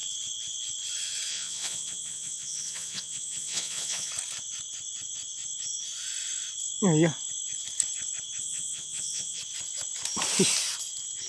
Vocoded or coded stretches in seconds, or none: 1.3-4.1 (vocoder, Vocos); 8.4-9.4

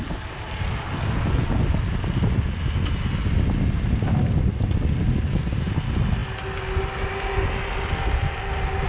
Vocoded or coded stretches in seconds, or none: none

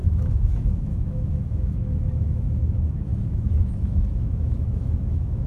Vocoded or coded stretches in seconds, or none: 0.0-5.5 (autoencoder, DAC-VAE)

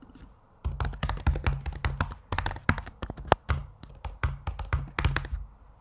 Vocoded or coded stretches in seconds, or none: none